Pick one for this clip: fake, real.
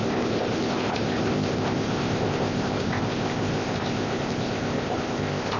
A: fake